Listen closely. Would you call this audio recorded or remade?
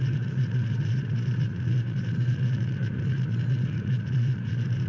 remade